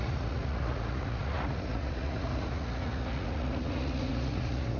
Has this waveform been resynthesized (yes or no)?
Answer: yes